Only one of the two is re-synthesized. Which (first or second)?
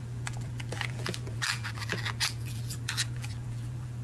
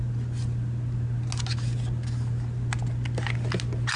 first